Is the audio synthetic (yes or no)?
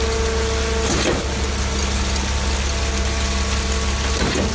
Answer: no